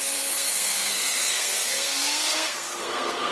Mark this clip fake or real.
fake